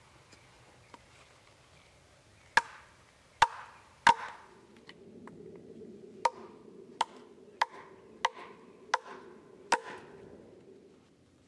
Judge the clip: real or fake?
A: real